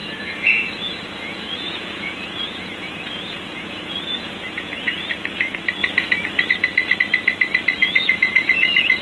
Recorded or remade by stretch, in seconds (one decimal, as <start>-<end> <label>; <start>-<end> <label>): 0.0-5.0 remade; 5.0-7.8 recorded; 7.8-9.0 remade